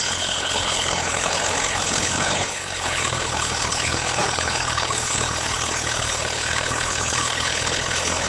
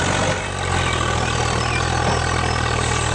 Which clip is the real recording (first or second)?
second